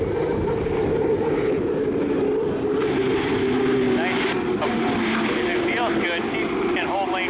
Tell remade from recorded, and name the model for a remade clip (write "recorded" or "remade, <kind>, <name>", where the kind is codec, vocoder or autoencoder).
recorded